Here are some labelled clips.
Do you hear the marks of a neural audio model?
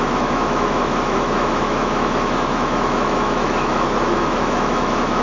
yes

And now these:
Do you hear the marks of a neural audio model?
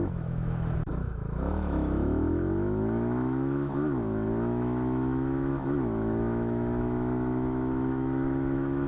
yes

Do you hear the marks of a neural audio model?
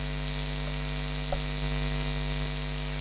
no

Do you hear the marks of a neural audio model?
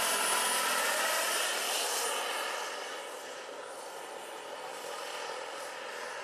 no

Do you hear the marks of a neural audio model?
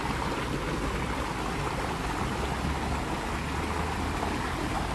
no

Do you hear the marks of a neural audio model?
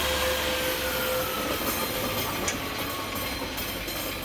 no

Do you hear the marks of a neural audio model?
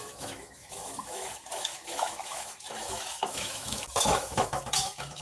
yes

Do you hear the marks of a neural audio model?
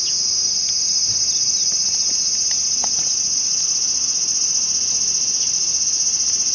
no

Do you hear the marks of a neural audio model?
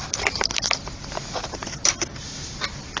no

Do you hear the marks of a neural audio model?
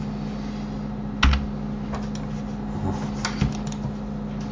no